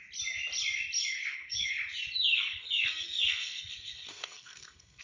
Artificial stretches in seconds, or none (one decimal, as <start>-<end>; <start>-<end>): 1.2-1.7; 2.3-5.0